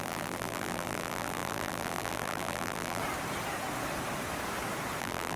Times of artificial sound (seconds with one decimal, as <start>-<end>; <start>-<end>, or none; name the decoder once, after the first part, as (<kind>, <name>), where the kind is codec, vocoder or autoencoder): 0.0-3.0 (vocoder, BigVGAN v2); 5.0-5.4

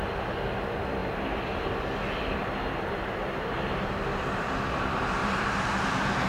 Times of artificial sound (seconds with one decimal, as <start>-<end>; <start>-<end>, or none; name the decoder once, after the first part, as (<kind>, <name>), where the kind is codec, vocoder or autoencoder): 5.2-5.7 (vocoder, BigVGAN v2)